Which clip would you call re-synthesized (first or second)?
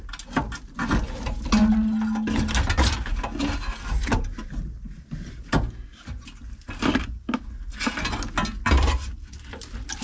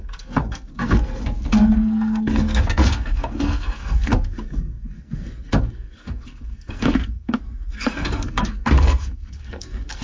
second